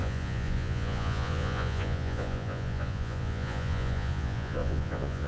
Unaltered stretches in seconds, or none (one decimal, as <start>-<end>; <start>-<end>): none